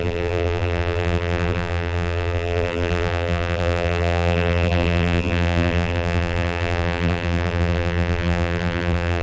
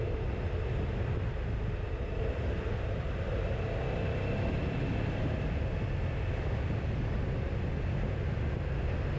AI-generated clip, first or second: first